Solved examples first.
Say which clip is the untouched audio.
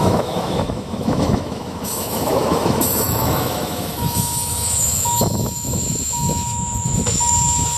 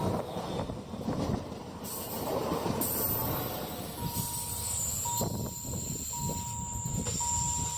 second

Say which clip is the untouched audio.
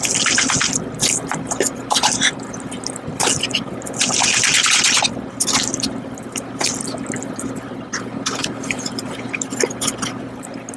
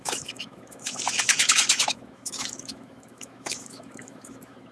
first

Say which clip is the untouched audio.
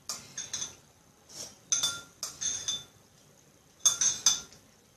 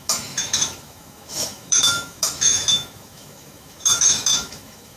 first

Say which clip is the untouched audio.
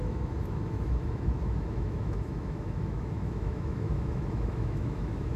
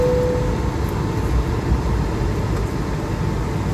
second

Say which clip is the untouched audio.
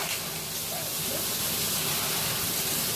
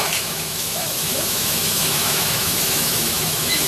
first